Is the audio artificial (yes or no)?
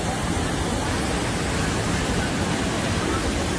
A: no